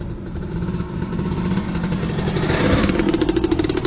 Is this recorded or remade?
remade